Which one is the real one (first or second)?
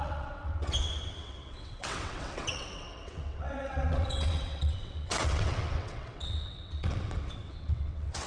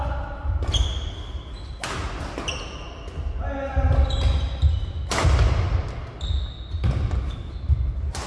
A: second